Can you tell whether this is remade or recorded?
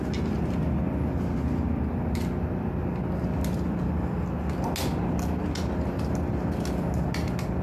recorded